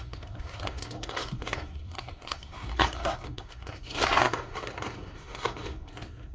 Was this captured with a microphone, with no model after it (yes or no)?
no